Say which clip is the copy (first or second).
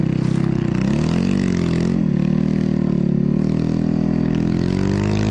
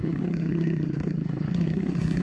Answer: second